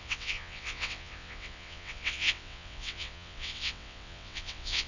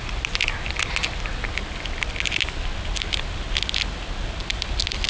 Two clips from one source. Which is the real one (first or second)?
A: second